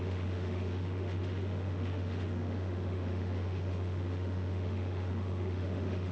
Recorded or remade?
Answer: remade